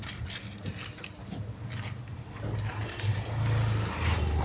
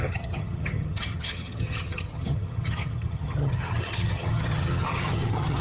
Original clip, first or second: first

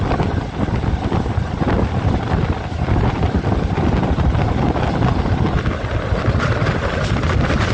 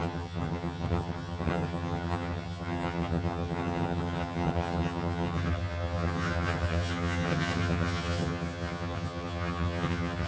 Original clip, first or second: first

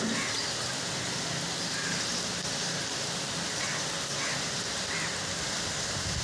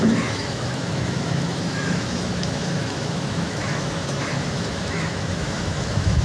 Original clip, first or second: first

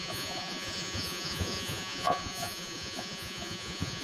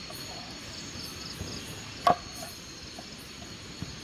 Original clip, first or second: second